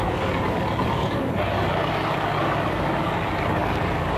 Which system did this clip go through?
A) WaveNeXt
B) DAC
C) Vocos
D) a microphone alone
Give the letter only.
B